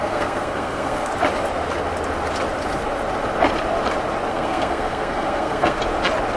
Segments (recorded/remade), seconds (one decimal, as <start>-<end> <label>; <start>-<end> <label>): 0.0-1.1 remade; 1.1-4.3 recorded; 4.3-5.8 remade; 5.8-6.4 recorded